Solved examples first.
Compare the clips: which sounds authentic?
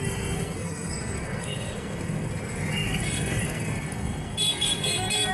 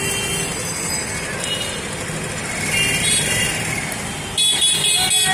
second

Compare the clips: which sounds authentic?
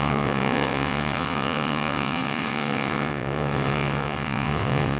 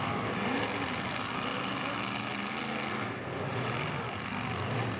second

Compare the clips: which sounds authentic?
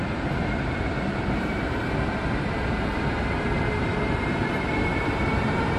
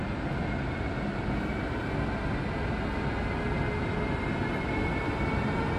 second